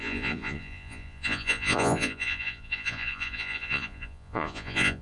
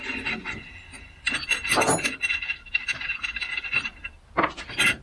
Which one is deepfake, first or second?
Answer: first